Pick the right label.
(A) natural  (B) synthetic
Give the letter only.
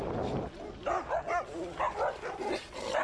A